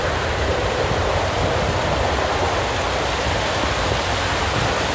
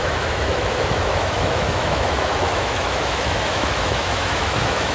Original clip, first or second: first